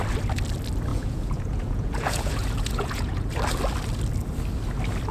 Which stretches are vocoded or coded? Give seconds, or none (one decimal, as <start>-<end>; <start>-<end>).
0.9-3.3